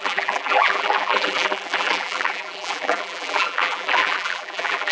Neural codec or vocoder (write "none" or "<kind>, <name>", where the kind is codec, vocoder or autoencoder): vocoder, BigVGAN v2